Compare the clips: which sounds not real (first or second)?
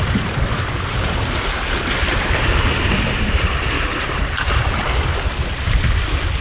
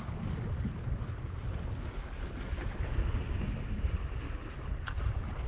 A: first